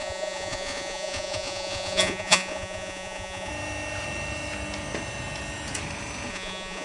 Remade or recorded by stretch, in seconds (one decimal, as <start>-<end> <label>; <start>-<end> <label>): 0.0-3.5 remade; 3.5-6.3 recorded; 6.3-6.8 remade